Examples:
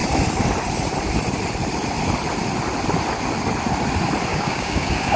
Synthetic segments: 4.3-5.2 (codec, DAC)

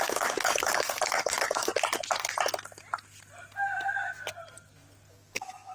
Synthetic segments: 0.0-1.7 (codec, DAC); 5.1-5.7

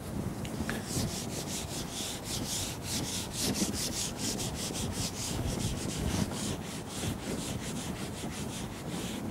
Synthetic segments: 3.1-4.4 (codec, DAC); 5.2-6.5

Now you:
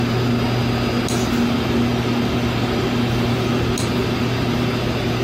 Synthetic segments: none

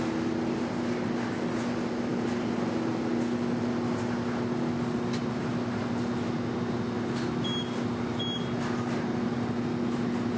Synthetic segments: none

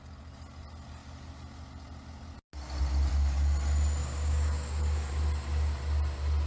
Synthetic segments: 4.0-5.1 (codec, DAC)

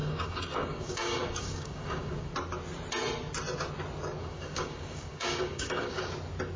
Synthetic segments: 0.0-2.3 (codec, DAC); 4.2-6.1